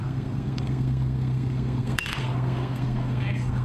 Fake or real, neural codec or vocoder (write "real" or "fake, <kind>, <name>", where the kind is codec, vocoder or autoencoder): fake, codec, SNAC